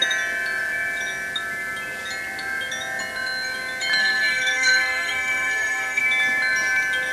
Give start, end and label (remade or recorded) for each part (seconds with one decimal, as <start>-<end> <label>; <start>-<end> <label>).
0.0-4.0 recorded; 4.0-6.0 remade; 6.0-7.1 recorded